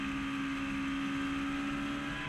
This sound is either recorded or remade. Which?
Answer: recorded